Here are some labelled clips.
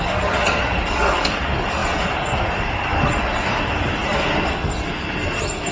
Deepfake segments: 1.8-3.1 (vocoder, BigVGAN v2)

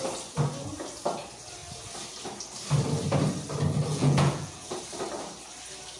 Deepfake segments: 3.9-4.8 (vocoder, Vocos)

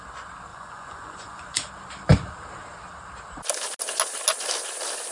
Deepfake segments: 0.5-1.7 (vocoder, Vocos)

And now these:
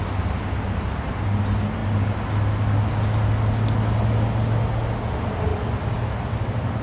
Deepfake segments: none

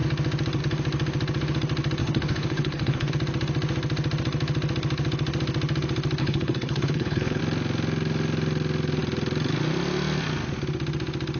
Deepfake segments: 2.0-3.1 (codec, HILCodec); 6.2-7.4

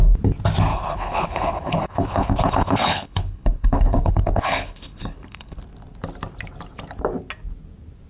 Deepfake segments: 0.7-5.6 (codec, HILCodec)

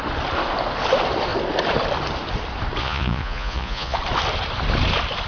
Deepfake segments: 2.8-4.0 (vocoder, Vocos)

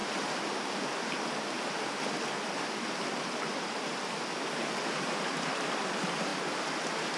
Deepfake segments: none